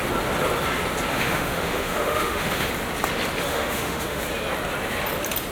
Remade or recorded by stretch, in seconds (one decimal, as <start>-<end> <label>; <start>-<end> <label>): 0.0-1.1 recorded; 1.1-2.7 remade; 2.7-3.5 recorded; 3.5-4.2 remade; 4.2-5.5 recorded